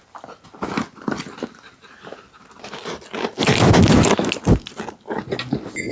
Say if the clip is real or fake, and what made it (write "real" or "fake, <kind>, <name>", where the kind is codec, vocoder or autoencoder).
real